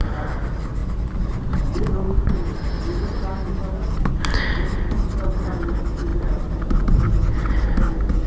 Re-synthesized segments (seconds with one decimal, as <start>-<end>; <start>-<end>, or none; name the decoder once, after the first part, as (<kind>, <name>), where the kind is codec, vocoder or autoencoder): none